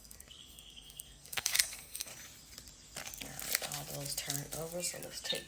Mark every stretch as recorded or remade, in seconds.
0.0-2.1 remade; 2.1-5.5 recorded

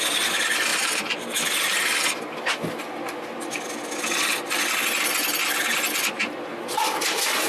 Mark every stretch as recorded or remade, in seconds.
0.0-7.5 recorded

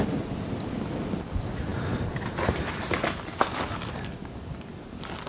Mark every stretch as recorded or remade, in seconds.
0.0-5.3 recorded

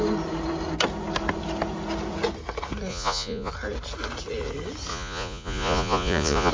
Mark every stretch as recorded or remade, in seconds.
0.0-2.9 recorded; 2.9-3.5 remade; 3.5-4.9 recorded; 4.9-6.5 remade